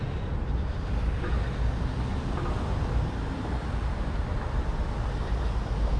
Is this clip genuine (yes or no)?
yes